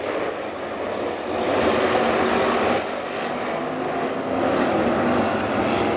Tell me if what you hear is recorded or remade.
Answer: recorded